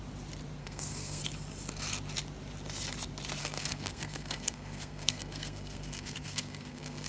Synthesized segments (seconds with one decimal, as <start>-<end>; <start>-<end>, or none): 0.6-1.2; 3.4-7.1